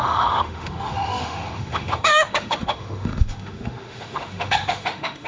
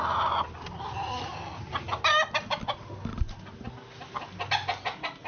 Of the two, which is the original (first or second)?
second